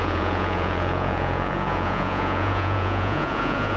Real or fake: fake